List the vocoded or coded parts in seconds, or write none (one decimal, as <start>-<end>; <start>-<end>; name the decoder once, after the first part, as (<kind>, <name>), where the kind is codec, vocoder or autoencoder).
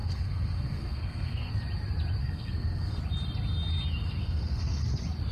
0.0-1.5 (codec, SNAC); 2.2-3.0; 4.2-4.8